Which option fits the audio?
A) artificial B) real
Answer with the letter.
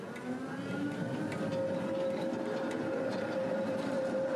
B